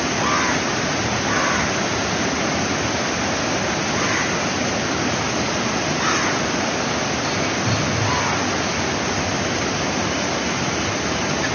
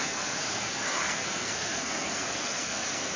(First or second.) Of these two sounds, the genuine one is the first